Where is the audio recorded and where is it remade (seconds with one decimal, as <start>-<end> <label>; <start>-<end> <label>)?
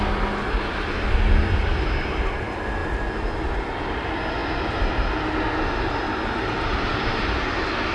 0.0-7.9 recorded